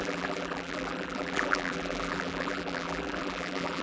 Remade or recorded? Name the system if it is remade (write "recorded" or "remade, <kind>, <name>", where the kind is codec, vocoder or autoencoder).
remade, vocoder, BigVGAN v2